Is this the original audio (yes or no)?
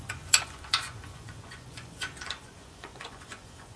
no